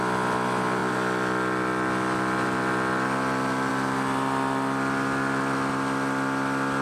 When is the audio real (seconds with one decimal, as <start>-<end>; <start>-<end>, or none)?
0.0-6.8